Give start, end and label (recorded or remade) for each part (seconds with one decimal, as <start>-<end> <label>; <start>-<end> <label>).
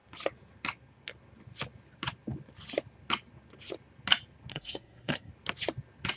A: 0.0-4.5 recorded; 4.5-5.3 remade; 5.3-6.2 recorded